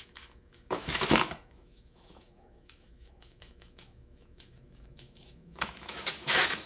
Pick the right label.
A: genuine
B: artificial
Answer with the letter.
B